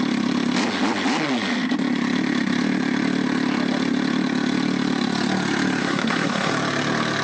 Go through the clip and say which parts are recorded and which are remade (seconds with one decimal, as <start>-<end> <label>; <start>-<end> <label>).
0.0-5.8 recorded; 5.8-6.5 remade; 6.5-7.2 recorded